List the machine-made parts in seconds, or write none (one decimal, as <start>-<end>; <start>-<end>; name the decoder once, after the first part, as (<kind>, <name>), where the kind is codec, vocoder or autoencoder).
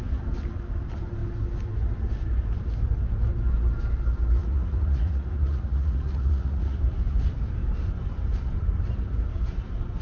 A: 4.4-6.8 (vocoder, Vocos)